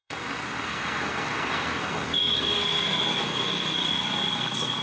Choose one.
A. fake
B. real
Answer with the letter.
A